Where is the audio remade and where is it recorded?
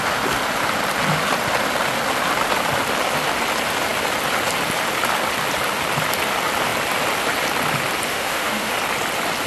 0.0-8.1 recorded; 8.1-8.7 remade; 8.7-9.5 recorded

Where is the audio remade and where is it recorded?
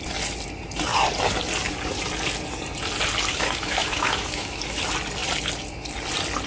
0.0-3.3 recorded; 3.3-4.8 remade; 4.8-6.5 recorded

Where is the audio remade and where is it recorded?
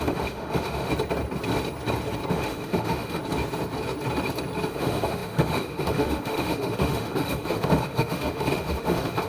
0.0-0.9 remade; 0.9-2.3 recorded; 2.3-3.2 remade; 3.2-4.7 recorded; 4.7-9.3 remade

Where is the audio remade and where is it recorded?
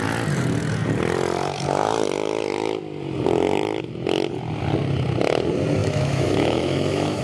0.0-5.8 recorded; 5.8-7.2 remade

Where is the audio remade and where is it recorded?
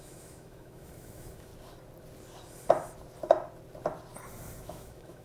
0.0-1.5 remade; 1.5-4.6 recorded; 4.6-5.2 remade